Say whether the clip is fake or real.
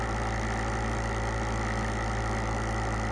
real